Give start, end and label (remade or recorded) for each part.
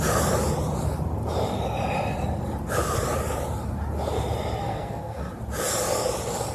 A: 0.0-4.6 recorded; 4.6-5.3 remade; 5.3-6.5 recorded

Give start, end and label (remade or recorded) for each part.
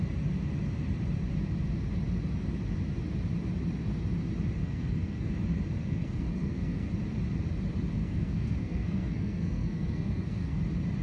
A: 0.0-4.6 recorded; 4.6-5.3 remade; 5.3-5.8 recorded; 5.8-6.9 remade; 6.9-8.0 recorded; 8.0-10.6 remade; 10.6-11.0 recorded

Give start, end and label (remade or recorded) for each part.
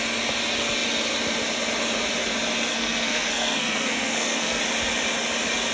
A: 0.0-2.7 recorded; 2.7-4.6 remade; 4.6-5.7 recorded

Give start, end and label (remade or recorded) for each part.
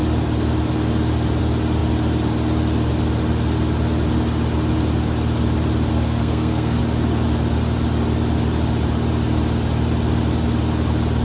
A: 0.0-5.9 recorded; 5.9-6.8 remade; 6.8-11.2 recorded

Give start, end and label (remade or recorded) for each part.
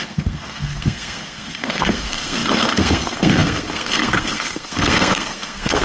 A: 0.0-5.8 remade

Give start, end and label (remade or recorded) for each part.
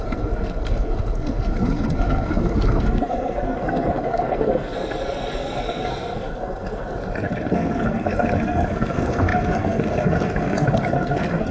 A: 0.0-11.5 remade